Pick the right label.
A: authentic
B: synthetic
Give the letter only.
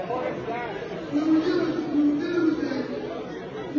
A